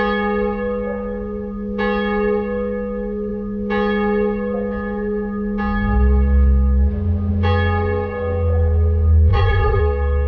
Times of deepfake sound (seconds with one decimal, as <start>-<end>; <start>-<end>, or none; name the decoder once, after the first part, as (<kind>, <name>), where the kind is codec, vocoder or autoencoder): 9.3-9.8 (vocoder, Vocos)